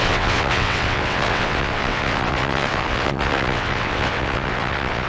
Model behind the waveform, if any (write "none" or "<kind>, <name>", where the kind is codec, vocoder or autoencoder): vocoder, WaveNeXt